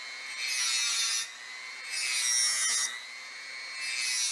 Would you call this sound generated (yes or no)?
no